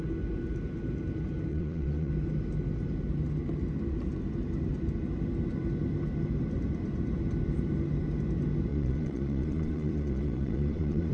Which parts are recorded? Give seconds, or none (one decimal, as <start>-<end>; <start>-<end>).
0.0-1.5; 2.1-8.7